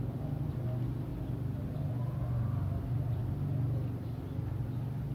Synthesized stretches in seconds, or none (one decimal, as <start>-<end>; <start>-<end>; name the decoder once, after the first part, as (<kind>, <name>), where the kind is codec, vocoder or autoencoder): none